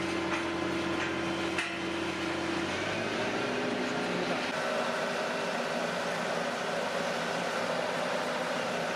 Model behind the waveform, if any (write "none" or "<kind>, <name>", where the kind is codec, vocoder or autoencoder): none